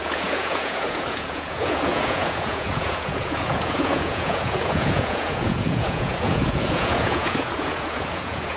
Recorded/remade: remade